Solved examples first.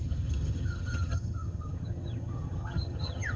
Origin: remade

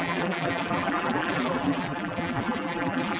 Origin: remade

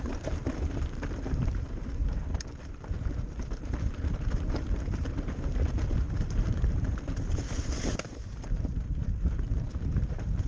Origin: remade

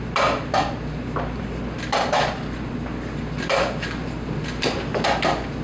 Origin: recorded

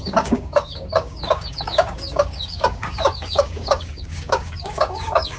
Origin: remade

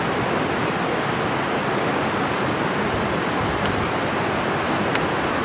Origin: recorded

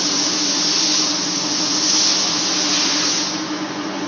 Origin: remade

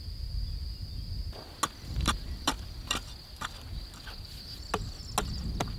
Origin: recorded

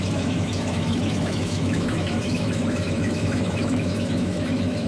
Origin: remade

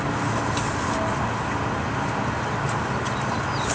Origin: recorded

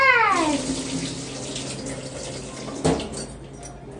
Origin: recorded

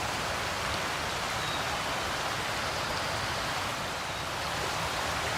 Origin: remade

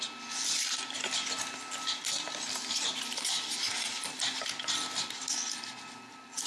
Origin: recorded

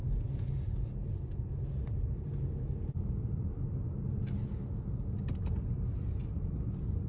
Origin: recorded